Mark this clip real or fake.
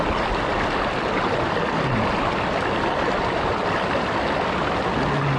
real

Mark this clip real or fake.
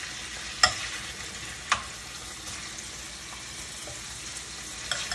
real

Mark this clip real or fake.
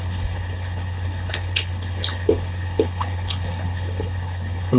fake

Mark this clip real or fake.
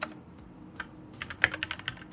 real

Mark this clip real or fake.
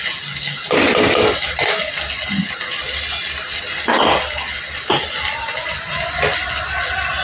real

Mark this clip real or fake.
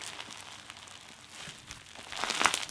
real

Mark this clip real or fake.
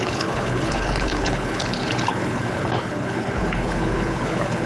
fake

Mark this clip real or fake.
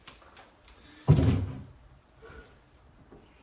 real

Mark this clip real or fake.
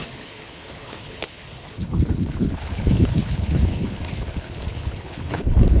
fake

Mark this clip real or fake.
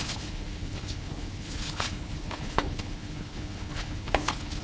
fake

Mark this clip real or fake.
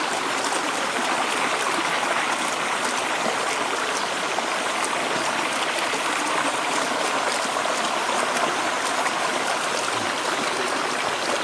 real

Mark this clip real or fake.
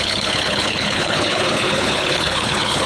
fake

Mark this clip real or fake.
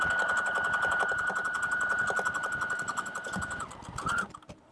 real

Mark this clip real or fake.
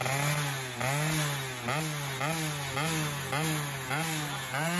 real